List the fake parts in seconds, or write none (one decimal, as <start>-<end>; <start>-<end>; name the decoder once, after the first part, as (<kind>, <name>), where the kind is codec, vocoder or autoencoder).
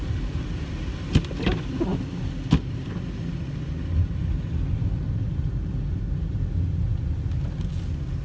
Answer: none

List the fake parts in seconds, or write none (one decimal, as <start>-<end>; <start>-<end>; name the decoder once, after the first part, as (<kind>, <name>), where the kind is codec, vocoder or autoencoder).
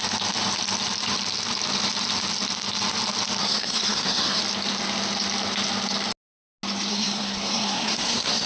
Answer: 3.4-4.4 (codec, SNAC); 6.9-8.5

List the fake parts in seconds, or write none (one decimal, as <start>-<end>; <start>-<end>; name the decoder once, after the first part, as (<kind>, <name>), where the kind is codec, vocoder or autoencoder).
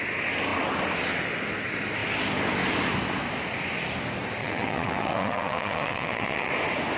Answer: 4.4-6.5 (vocoder, WaveNeXt)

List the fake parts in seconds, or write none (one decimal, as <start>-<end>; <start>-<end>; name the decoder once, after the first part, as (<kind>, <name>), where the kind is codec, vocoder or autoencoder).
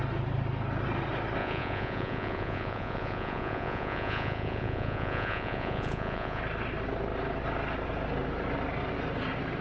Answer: 1.4-6.4 (vocoder, Vocos)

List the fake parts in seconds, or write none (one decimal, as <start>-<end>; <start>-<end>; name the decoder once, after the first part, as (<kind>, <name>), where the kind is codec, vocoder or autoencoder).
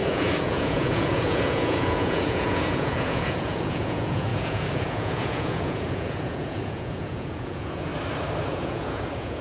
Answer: 0.0-7.9 (vocoder, Vocos); 8.4-9.4